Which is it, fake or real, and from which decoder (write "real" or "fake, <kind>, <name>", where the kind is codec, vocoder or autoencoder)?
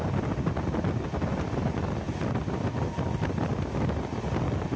real